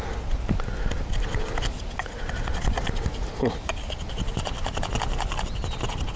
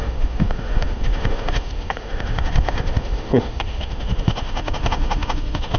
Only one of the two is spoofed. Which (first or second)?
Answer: second